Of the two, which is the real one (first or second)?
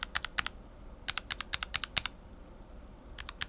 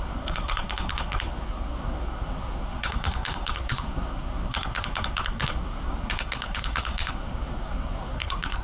first